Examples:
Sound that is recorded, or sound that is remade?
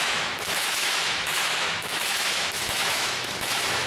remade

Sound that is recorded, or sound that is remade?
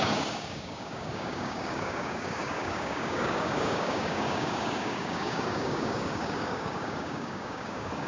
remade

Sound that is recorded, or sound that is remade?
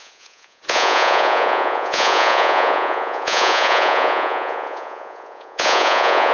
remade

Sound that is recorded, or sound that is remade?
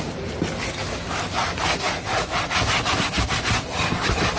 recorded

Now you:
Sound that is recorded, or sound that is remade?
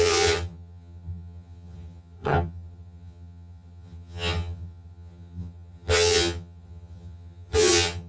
remade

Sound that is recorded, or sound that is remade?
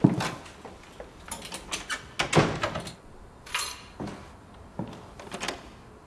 recorded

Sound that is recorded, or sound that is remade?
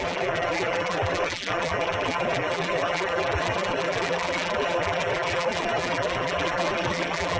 remade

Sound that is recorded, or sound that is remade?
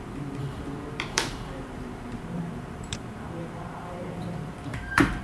remade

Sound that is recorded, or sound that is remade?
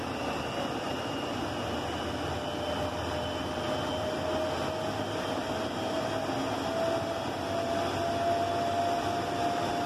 recorded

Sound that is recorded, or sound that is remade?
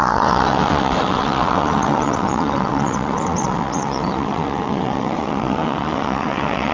remade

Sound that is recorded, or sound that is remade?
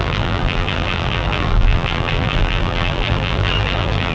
remade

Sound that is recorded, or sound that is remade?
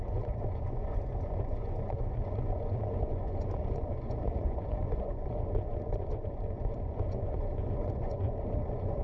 remade